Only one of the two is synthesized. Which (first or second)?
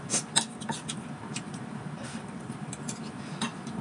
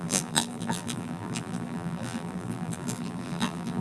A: second